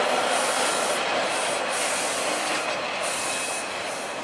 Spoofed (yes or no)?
no